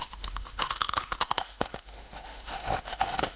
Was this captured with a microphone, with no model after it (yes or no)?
no